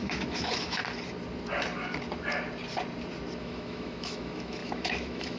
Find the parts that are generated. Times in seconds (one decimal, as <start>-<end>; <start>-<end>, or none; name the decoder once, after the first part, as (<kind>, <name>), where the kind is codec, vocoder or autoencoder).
0.0-0.8 (autoencoder, DAC-VAE); 3.4-5.4